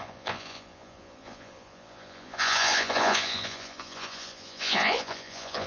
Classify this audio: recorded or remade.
remade